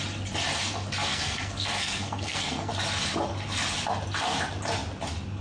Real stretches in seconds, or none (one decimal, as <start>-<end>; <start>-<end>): 0.0-1.1; 2.7-5.4